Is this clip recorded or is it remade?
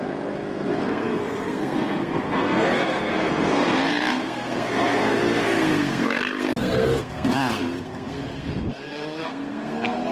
remade